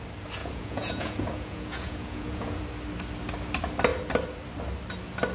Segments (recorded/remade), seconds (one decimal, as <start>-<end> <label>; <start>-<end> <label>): 0.0-0.4 recorded; 0.4-2.6 remade; 2.6-5.3 recorded